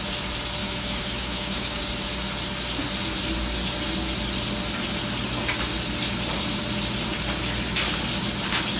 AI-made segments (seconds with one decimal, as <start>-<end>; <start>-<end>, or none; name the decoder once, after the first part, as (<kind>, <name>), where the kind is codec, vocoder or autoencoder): 0.6-1.8 (autoencoder, DAC-VAE)